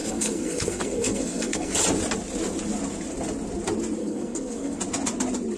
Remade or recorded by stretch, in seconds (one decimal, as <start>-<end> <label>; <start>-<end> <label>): 0.0-1.8 remade; 1.8-4.0 recorded; 4.0-4.8 remade; 4.8-5.6 recorded